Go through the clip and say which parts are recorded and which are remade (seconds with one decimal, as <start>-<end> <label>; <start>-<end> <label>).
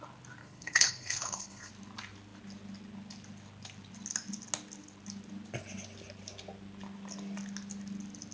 0.0-0.4 recorded; 0.4-1.7 remade; 1.7-8.3 recorded